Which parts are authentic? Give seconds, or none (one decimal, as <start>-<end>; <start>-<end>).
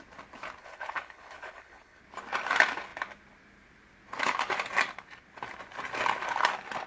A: 0.0-0.6; 2.0-6.9